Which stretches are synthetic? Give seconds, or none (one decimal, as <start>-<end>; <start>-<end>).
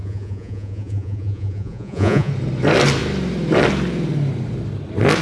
0.0-2.3